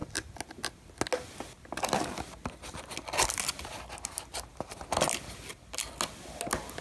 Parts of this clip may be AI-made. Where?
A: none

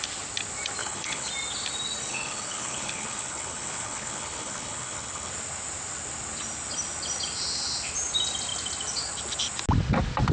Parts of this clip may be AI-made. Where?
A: 0.8-1.3; 2.1-5.3

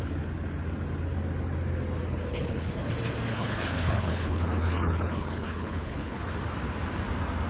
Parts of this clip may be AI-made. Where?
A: 2.3-2.9; 3.3-6.2

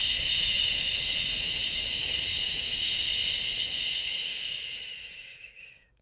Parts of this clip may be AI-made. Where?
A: 0.0-3.1; 3.6-6.0

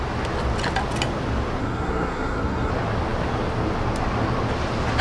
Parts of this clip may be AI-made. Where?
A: 1.6-2.7

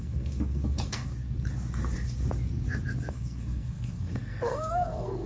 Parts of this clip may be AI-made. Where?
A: 0.0-1.1; 3.1-5.3